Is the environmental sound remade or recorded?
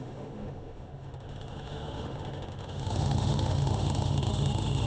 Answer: remade